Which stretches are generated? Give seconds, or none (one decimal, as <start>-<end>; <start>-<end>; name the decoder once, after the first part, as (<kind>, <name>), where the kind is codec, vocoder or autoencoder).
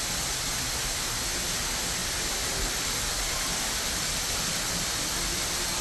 none